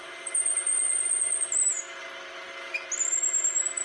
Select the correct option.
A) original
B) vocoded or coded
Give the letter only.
A